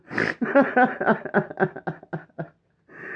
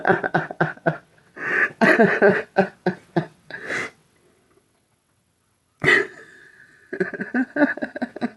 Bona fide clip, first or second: first